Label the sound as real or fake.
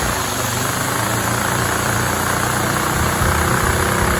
fake